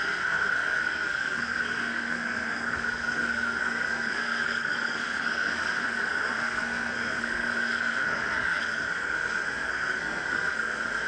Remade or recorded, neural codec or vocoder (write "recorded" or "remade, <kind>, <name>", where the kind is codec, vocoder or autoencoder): remade, codec, SNAC